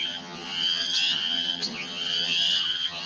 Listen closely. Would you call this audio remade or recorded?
remade